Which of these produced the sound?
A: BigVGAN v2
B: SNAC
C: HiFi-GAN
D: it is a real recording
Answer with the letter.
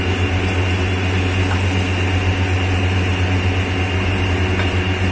D